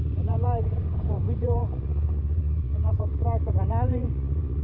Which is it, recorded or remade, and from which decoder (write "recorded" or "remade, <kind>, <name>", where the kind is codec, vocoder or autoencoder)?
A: remade, vocoder, Vocos